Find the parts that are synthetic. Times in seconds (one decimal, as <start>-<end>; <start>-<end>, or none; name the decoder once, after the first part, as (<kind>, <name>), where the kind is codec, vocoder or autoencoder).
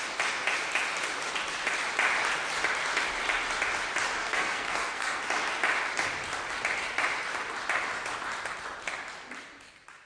4.2-5.2 (codec, SNAC)